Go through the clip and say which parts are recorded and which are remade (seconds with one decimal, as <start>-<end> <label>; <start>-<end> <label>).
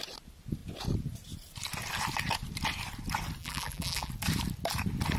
0.0-3.4 recorded; 3.4-4.1 remade; 4.1-5.2 recorded